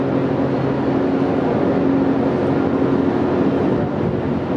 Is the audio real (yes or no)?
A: yes